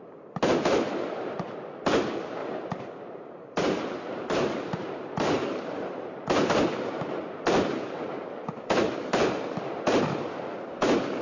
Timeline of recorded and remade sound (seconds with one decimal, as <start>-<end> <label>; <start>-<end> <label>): 0.0-2.4 recorded; 2.4-6.3 remade; 6.3-11.2 recorded